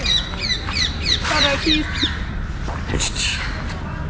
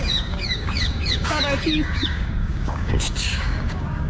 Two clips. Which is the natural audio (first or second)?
first